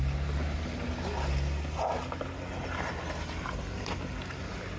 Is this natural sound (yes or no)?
yes